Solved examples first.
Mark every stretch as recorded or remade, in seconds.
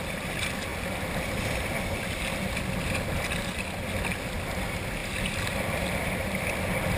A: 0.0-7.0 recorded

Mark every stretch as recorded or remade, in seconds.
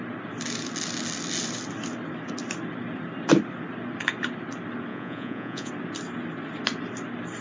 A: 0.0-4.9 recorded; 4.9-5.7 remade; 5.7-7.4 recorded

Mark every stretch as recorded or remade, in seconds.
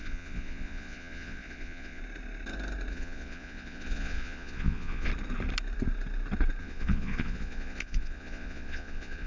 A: 0.0-2.0 remade; 2.0-2.9 recorded; 2.9-5.1 remade; 5.1-6.6 recorded; 6.6-9.3 remade